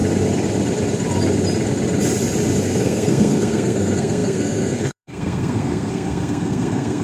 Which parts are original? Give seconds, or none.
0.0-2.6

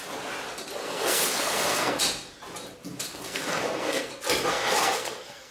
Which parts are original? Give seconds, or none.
0.0-0.8; 2.0-3.1; 4.1-4.5

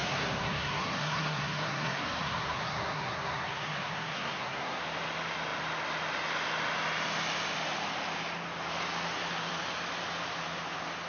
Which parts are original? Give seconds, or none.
4.8-11.1

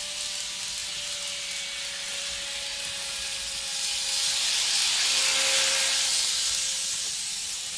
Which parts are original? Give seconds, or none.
0.0-7.8